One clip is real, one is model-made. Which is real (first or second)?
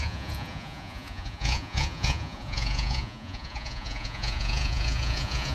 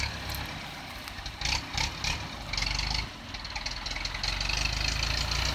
second